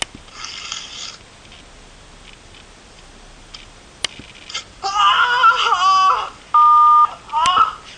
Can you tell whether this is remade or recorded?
recorded